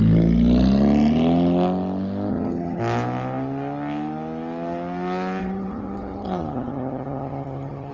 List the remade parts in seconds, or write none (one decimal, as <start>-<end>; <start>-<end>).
2.3-2.8; 5.4-7.9